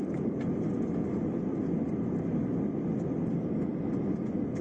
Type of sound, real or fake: real